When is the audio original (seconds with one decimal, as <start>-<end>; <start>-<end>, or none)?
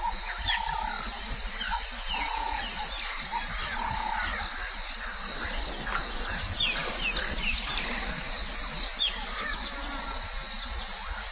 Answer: 0.0-11.3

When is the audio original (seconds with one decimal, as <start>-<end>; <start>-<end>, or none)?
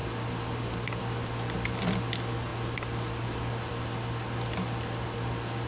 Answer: 0.0-5.7